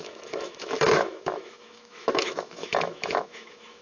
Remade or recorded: remade